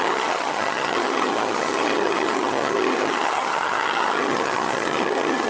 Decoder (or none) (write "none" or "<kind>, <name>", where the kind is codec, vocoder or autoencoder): vocoder, HiFi-GAN